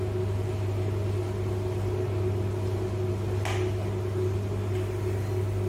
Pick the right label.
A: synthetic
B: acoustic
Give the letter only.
B